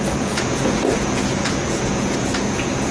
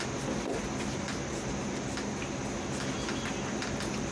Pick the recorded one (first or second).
second